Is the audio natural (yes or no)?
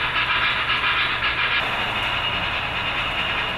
yes